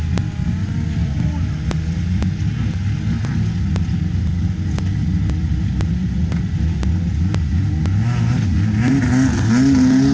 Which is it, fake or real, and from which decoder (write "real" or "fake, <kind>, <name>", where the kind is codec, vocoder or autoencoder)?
real